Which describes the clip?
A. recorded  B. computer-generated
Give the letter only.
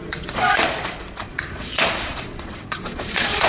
B